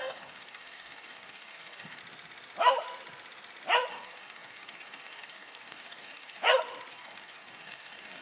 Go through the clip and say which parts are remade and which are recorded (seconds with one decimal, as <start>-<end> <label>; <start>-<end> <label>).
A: 0.0-2.0 remade; 2.0-3.9 recorded; 3.9-6.4 remade; 6.4-6.9 recorded; 6.9-8.2 remade